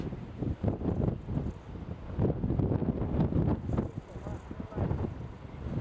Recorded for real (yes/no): yes